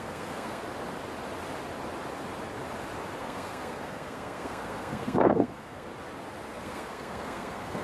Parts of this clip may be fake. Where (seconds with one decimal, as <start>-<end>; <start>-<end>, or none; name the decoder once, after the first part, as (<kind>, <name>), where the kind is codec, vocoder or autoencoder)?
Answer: 0.0-0.6 (codec, SNAC); 3.2-5.9; 6.5-7.8